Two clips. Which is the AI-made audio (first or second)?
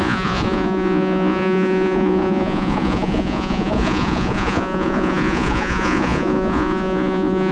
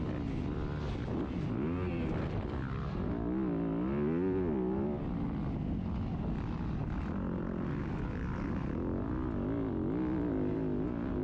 first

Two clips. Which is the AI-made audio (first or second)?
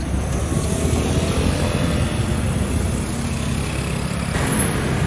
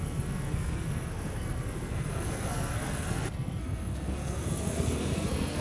second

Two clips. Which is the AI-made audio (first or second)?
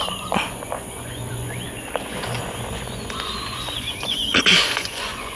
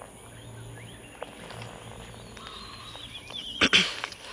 first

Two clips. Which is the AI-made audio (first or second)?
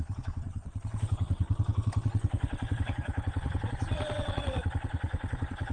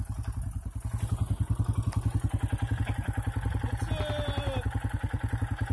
first